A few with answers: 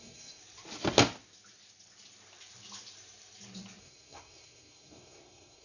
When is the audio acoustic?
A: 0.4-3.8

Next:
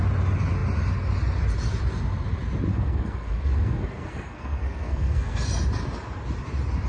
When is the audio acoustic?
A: 0.0-2.7; 5.5-6.9